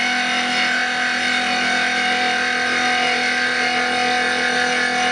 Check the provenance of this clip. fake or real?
real